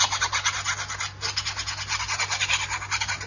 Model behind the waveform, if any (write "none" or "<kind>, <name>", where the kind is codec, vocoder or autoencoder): none